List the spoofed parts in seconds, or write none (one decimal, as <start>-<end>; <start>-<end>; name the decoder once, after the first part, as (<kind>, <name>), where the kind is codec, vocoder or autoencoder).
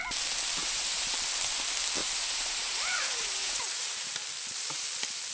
0.6-1.1 (vocoder, Vocos); 2.0-4.1